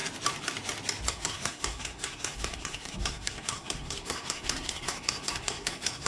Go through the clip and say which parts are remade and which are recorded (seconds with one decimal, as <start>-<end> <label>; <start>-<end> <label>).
0.0-1.1 recorded; 1.1-6.1 remade